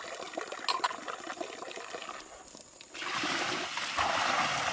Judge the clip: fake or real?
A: real